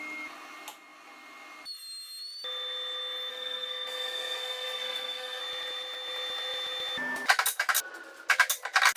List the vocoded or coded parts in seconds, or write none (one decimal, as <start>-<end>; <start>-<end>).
3.3-5.4